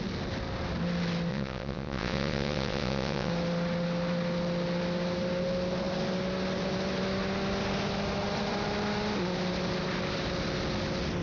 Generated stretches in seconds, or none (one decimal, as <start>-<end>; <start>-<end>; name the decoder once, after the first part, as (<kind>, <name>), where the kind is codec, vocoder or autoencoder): 1.3-3.3 (vocoder, WaveNeXt)